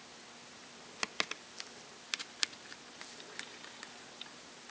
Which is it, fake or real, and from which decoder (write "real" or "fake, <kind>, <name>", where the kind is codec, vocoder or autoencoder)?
real